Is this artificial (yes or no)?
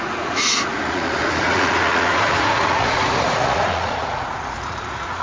yes